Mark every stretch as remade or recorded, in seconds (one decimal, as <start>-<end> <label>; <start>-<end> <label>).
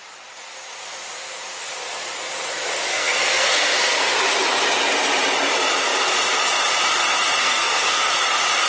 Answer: 0.0-2.9 recorded; 2.9-4.1 remade; 4.1-7.4 recorded; 7.4-8.1 remade; 8.1-8.7 recorded